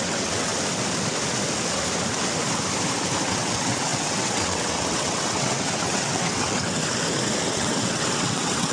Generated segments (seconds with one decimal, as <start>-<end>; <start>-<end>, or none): 0.0-0.5; 3.3-6.8; 7.5-8.7